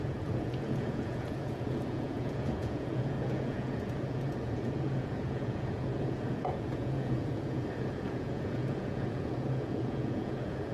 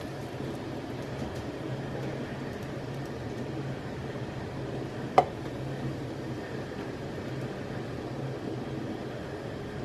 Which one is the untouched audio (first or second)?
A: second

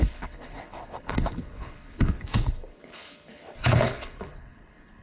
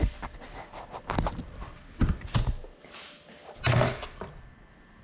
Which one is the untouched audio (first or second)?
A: second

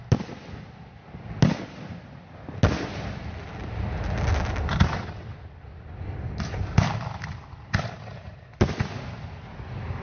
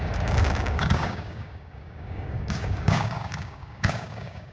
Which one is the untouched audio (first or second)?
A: first